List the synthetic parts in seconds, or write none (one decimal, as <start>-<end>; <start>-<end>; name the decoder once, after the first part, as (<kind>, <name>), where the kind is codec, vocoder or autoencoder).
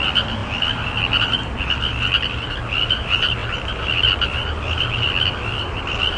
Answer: none